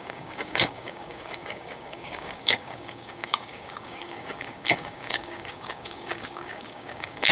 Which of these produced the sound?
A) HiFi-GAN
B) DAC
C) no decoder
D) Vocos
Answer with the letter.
B